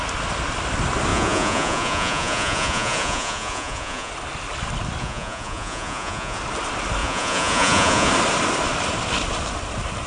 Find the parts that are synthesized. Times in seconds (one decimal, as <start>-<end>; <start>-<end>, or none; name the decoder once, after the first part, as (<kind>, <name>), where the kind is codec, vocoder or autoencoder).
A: 1.1-4.1 (vocoder, Vocos); 5.0-6.4; 7.0-8.1